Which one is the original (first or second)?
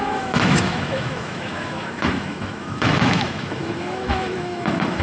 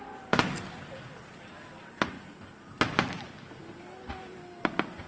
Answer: second